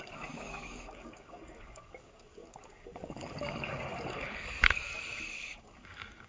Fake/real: fake